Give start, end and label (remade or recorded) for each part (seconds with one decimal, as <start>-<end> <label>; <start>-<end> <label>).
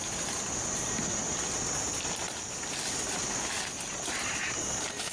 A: 0.0-5.1 recorded